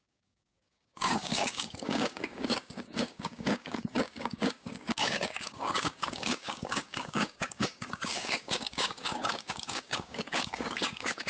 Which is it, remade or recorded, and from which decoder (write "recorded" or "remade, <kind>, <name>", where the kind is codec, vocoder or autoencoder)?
remade, codec, DAC